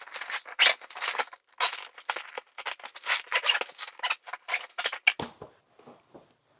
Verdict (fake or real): real